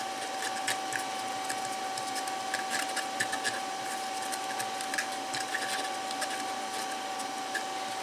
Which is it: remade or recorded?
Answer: recorded